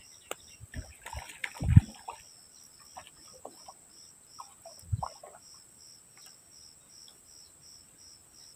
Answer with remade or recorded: recorded